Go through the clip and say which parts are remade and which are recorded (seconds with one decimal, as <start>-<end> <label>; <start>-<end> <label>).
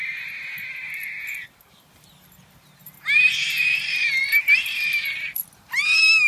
0.0-6.3 recorded